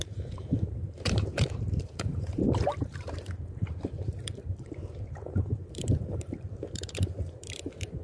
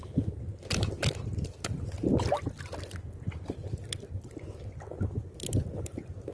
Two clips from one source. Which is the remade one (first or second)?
first